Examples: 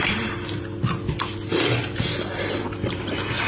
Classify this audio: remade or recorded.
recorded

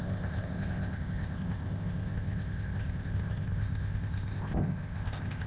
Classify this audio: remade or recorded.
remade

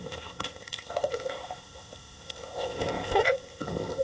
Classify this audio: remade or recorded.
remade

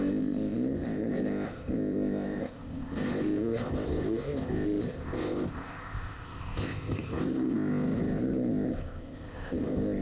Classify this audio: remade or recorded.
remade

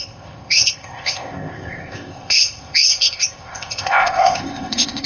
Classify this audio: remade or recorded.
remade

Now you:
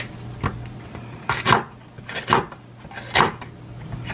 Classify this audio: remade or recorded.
recorded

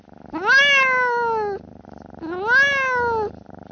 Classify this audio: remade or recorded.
recorded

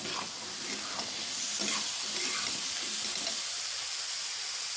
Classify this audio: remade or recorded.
recorded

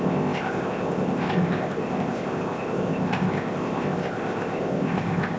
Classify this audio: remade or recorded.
remade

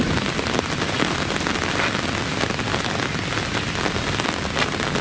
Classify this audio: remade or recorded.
recorded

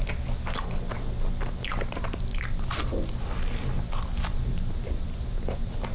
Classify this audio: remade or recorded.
recorded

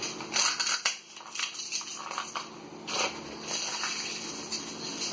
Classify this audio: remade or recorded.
recorded